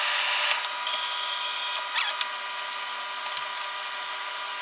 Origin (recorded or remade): recorded